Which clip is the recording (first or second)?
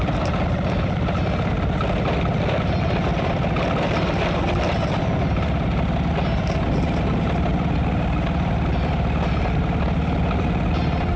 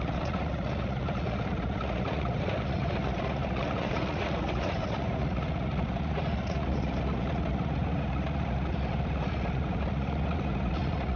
first